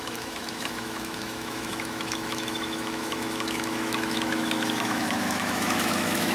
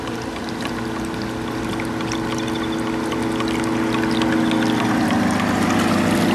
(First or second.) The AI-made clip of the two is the first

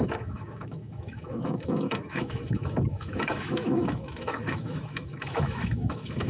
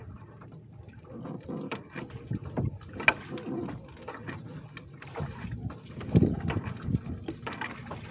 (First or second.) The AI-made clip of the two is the first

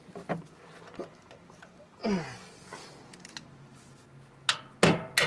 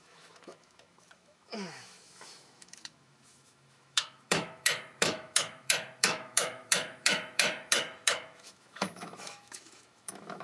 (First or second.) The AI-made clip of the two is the second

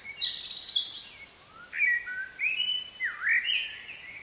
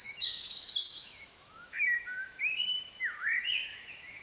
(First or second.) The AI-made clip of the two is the second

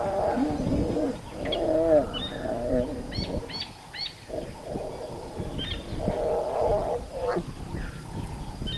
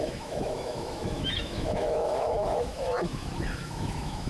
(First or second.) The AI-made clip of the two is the second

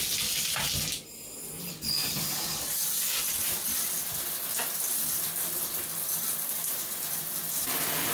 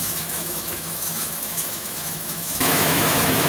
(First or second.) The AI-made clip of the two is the second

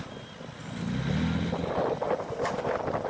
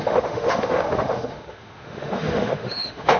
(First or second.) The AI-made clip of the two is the second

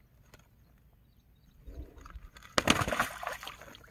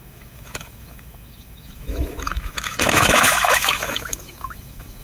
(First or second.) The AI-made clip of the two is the second